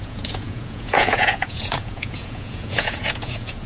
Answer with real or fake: fake